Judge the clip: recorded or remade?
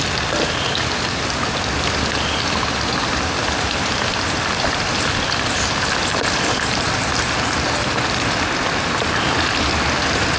recorded